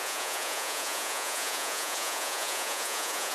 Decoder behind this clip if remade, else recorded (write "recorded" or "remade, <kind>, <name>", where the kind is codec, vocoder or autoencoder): remade, vocoder, Vocos